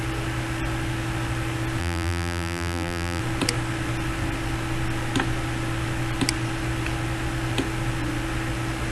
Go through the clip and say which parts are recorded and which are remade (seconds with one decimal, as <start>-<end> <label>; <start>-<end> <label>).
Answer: 0.0-1.8 recorded; 1.8-3.2 remade; 3.2-8.9 recorded

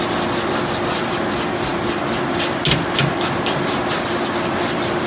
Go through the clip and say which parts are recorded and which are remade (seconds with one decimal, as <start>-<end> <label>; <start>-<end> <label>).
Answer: 0.0-5.1 recorded

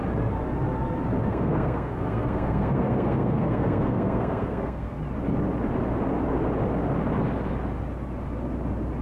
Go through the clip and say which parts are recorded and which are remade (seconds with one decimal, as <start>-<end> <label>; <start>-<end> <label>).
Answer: 0.0-1.3 recorded; 1.3-5.0 remade; 5.0-9.0 recorded

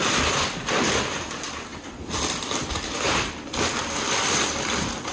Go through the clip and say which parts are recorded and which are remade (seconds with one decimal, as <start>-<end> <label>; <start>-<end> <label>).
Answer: 0.0-5.1 remade

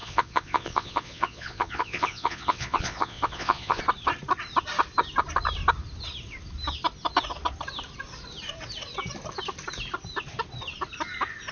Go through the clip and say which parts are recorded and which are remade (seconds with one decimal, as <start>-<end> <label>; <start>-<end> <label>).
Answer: 0.0-3.8 remade; 3.8-11.5 recorded

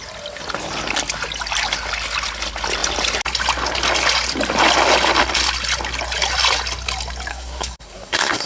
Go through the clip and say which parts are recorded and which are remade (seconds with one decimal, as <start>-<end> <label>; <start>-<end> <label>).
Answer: 0.0-7.3 recorded; 7.3-8.5 remade

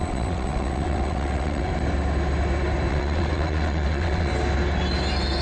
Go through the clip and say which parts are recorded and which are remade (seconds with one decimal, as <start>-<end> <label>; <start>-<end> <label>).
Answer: 0.0-1.7 remade; 1.7-2.9 recorded; 2.9-4.3 remade; 4.3-5.4 recorded

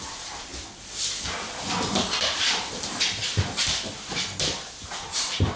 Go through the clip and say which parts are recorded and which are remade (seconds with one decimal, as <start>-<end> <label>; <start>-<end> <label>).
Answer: 0.0-0.5 remade; 0.5-2.2 recorded; 2.2-3.6 remade; 3.6-4.9 recorded; 4.9-5.6 remade